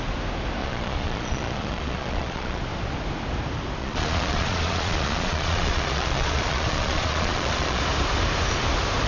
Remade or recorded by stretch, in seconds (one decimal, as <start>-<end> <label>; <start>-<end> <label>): 0.0-0.6 recorded; 0.6-2.6 remade; 2.6-3.8 recorded; 3.8-7.8 remade; 7.8-9.1 recorded